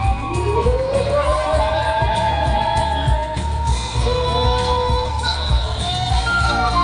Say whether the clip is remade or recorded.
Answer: remade